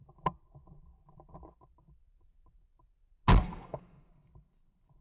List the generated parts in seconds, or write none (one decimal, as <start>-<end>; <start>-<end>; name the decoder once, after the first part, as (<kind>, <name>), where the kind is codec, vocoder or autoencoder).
3.4-4.1 (autoencoder, DAC-VAE)